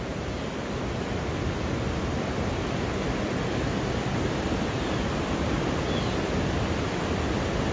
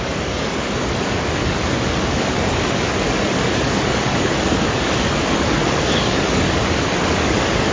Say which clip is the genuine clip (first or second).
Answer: first